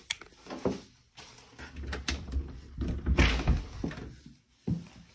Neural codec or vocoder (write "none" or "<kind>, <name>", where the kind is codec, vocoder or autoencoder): none